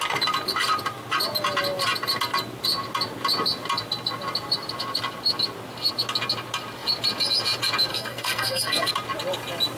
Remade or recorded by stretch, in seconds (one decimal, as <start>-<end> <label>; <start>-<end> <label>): 0.0-7.9 recorded; 7.9-8.9 remade; 8.9-9.8 recorded